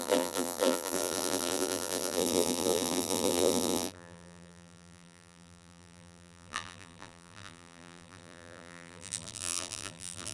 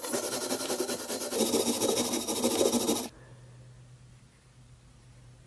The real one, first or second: second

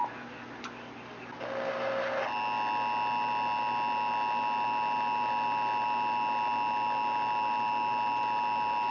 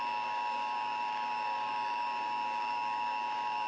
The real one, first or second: first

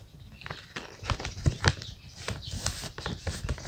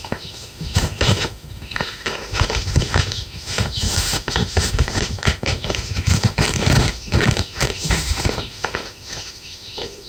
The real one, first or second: first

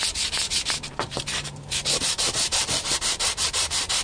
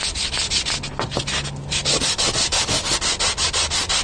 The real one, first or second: second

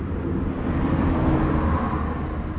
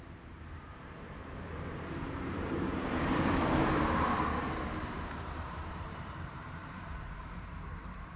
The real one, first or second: first